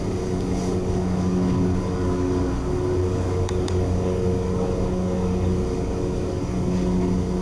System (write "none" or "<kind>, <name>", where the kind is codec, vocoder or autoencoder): codec, DAC